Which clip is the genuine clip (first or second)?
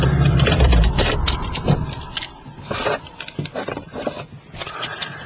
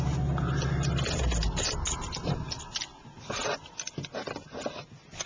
second